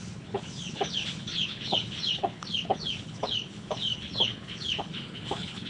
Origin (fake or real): fake